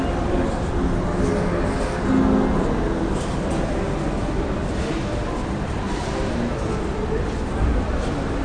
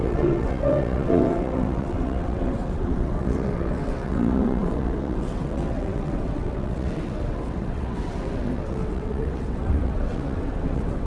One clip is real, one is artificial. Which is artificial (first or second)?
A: second